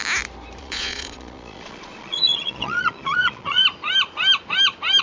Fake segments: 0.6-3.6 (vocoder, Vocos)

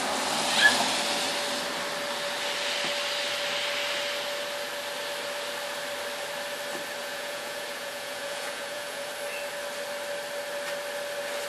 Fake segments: 7.0-9.1 (vocoder, Vocos)

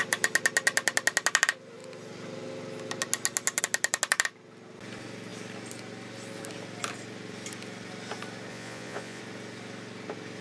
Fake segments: 8.5-9.2 (vocoder, Vocos)

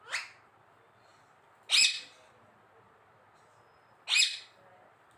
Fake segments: none

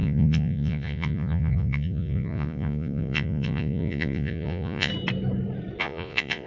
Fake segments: 0.0-4.9 (vocoder, Vocos); 5.8-6.5

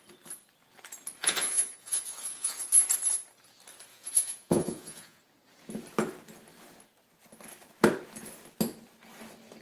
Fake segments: 1.2-2.6 (vocoder, Vocos); 3.9-5.2